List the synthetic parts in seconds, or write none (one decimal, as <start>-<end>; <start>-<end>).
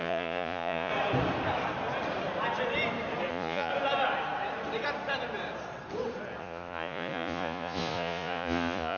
0.0-0.9; 3.3-3.7; 6.4-9.0